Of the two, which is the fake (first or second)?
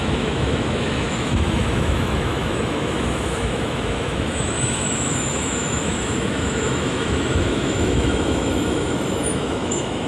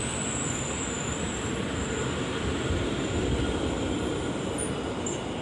first